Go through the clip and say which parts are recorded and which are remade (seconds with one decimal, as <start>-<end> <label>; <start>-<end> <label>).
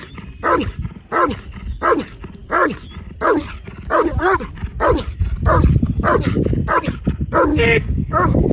0.0-7.5 recorded; 7.5-8.5 remade